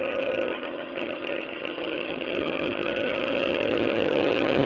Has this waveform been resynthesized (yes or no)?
yes